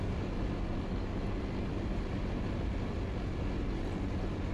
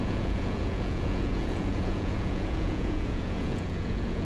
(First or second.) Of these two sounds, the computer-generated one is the second